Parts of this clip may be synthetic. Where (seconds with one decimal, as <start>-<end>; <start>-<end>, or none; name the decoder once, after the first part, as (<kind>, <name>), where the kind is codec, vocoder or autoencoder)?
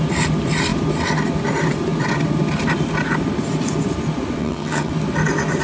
4.4-4.9 (vocoder, HiFi-GAN)